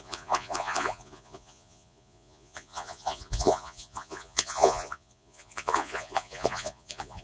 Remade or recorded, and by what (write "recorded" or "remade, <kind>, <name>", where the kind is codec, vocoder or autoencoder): remade, vocoder, Vocos